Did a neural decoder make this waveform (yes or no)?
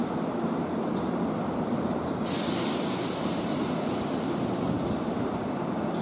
yes